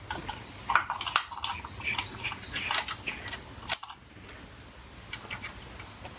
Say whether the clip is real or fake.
real